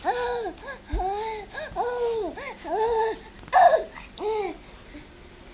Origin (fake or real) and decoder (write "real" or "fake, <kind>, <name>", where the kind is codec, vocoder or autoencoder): real